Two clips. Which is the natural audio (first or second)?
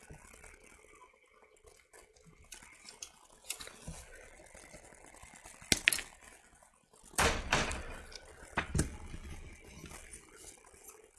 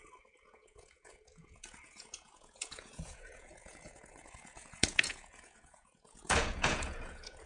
first